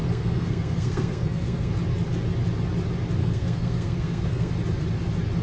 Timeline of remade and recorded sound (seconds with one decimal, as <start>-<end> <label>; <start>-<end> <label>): 0.0-1.7 remade; 1.7-3.2 recorded; 3.2-4.5 remade; 4.5-5.4 recorded